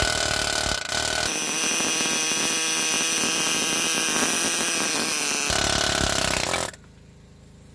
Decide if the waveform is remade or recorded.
recorded